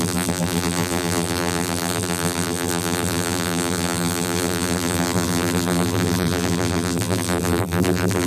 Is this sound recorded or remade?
remade